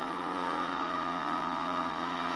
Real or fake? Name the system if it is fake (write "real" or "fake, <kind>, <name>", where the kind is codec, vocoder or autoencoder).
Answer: fake, vocoder, Vocos